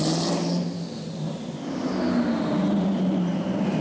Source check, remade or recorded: recorded